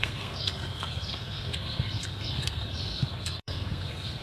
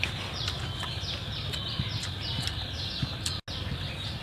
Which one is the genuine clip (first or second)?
second